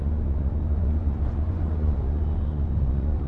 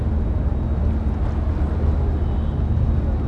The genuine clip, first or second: second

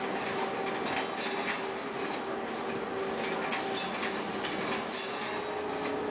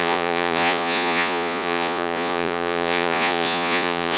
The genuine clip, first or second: first